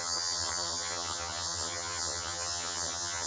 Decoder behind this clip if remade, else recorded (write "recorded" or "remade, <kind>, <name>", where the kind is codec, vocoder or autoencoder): remade, vocoder, HiFi-GAN